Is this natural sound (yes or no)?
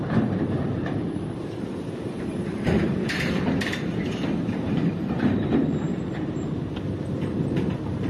no